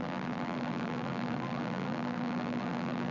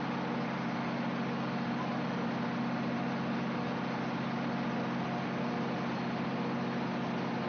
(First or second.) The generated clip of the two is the first